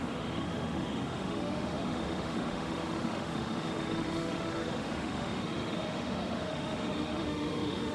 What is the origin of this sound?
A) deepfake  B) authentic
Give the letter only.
A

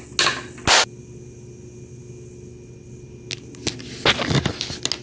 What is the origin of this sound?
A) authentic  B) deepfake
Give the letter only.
A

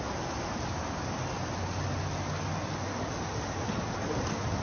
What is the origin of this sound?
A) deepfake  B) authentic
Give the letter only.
B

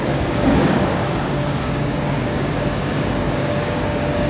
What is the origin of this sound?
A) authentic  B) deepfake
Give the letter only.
B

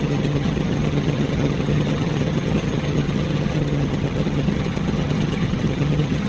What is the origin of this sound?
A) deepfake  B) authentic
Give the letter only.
A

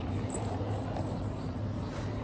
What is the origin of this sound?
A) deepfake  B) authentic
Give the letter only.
B